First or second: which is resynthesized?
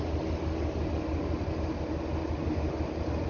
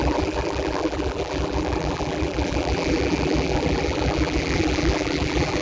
second